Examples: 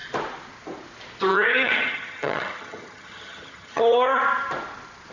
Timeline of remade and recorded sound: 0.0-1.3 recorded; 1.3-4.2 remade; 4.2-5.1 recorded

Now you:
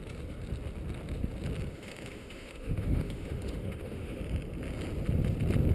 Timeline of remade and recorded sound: 0.0-1.7 recorded; 1.7-4.2 remade; 4.2-5.7 recorded

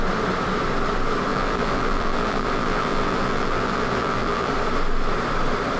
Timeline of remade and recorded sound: 0.0-1.3 recorded; 1.3-4.5 remade; 4.5-5.8 recorded

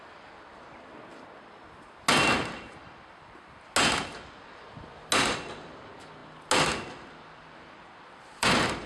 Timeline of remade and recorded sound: 0.0-1.1 remade; 1.1-5.4 recorded; 5.4-6.2 remade; 6.2-7.2 recorded; 7.2-8.9 remade